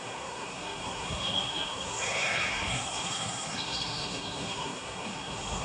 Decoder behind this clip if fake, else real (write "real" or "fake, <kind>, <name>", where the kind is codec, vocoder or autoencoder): fake, codec, SNAC